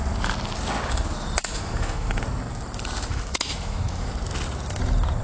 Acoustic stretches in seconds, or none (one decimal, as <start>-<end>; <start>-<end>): 0.0-1.4; 2.2-3.1; 4.1-5.2